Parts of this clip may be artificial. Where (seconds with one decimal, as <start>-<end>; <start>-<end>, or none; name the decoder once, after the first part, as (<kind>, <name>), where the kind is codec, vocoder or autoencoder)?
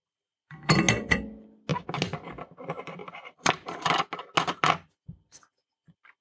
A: 0.0-0.8 (vocoder, BigVGAN v2); 3.0-3.8